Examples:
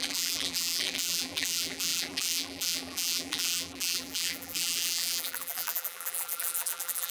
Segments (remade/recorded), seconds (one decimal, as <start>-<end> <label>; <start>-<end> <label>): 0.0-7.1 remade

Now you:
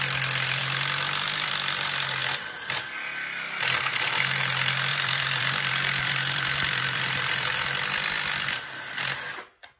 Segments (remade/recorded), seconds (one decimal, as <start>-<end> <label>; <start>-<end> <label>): 0.0-4.9 recorded; 4.9-7.0 remade; 7.0-9.8 recorded

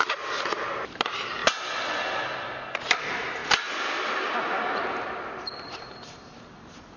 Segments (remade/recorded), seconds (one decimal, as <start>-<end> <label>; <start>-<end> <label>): 0.0-1.4 remade; 1.4-3.0 recorded; 3.0-7.0 remade

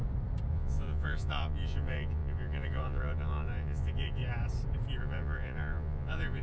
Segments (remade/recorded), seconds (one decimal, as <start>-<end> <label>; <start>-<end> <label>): 0.0-0.5 recorded; 0.5-4.2 remade; 4.2-5.0 recorded; 5.0-6.4 remade

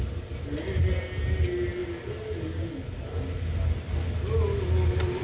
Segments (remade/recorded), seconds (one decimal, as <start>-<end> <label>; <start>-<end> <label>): 0.0-5.2 recorded

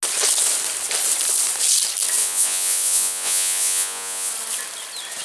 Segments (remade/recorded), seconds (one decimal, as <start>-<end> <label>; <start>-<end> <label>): 0.0-2.2 recorded; 2.2-4.3 remade; 4.3-5.2 recorded

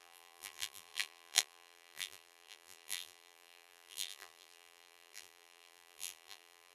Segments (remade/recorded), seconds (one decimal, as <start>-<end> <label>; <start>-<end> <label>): 0.0-6.7 remade

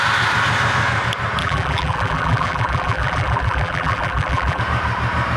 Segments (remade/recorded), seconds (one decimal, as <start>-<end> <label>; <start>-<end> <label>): 0.0-1.4 recorded; 1.4-4.6 remade; 4.6-5.4 recorded